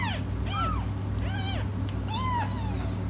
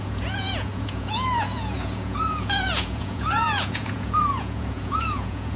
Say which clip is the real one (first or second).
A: first